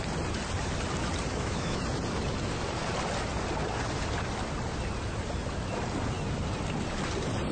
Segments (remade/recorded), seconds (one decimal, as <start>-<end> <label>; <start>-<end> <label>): 0.0-1.3 recorded; 1.3-1.8 remade; 1.8-7.5 recorded